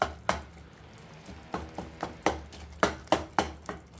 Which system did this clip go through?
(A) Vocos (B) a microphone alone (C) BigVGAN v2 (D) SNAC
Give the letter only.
B